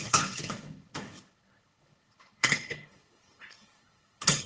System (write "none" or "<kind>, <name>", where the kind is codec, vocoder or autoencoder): codec, HILCodec